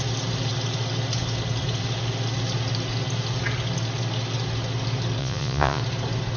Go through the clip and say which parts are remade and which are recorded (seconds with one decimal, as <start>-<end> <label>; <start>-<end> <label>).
0.0-5.2 recorded; 5.2-5.8 remade; 5.8-6.4 recorded